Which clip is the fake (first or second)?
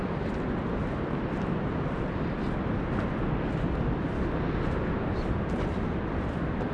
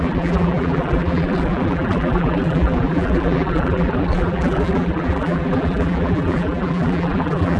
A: second